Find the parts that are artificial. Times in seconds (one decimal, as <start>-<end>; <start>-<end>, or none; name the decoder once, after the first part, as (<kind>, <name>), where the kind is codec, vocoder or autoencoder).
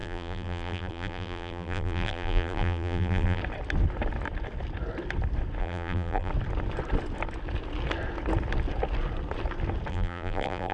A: 0.0-3.4 (vocoder, BigVGAN v2); 5.6-6.3; 9.9-10.7